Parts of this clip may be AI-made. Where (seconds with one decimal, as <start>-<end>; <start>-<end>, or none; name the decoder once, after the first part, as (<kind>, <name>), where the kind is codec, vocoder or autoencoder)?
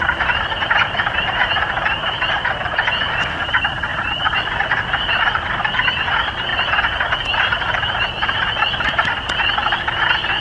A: none